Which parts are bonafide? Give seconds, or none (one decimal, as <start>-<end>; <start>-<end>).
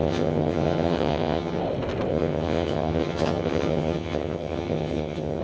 1.6-2.1